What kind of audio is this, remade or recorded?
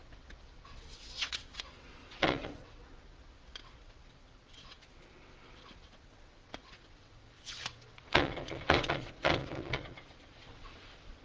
remade